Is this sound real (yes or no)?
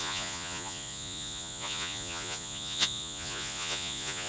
no